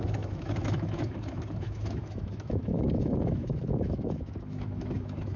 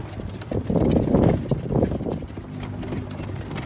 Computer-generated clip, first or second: first